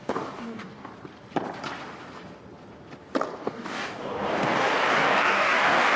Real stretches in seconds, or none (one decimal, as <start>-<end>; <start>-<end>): 0.9-3.4